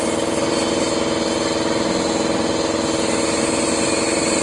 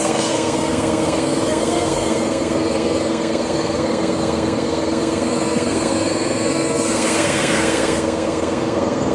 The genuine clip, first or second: first